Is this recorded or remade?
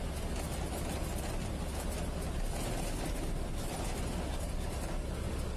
recorded